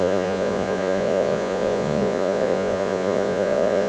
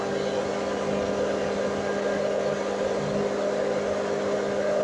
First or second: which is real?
second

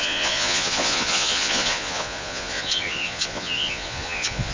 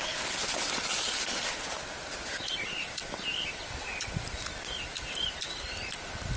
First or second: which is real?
second